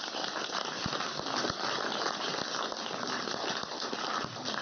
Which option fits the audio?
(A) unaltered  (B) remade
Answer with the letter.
A